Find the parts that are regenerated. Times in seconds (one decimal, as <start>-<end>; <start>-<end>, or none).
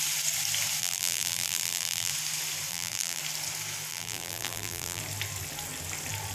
0.8-2.1; 2.7-3.2; 3.9-5.0